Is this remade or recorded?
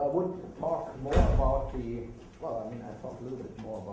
recorded